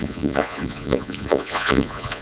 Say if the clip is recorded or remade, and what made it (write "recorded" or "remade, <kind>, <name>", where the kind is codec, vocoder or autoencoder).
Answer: remade, vocoder, Vocos